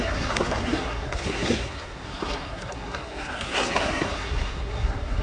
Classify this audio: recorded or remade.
remade